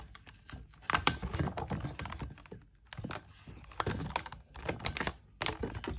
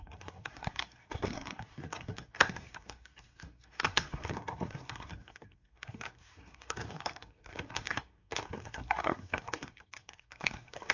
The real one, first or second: first